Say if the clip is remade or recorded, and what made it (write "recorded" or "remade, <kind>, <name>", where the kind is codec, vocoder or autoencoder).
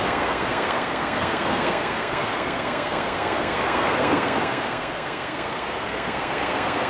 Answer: remade, codec, SNAC